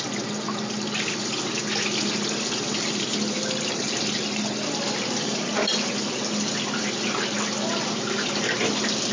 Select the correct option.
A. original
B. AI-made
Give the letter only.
A